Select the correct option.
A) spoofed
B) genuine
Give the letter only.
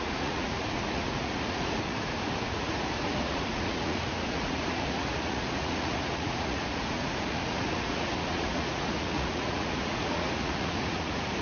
A